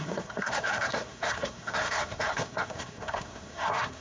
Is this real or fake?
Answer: fake